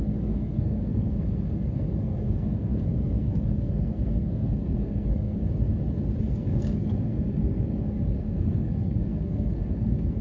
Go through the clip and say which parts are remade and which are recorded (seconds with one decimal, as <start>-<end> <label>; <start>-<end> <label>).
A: 0.0-5.4 remade; 5.4-6.2 recorded; 6.2-10.2 remade